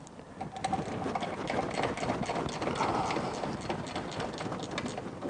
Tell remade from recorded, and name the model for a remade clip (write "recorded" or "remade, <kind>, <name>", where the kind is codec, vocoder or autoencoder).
recorded